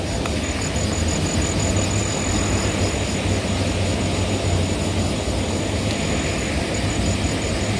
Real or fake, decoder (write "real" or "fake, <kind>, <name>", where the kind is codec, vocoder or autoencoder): real